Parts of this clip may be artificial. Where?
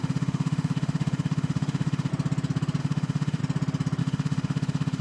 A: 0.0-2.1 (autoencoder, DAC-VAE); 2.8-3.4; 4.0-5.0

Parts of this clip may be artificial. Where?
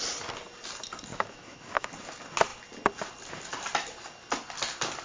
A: 1.1-1.9 (autoencoder, DAC-VAE)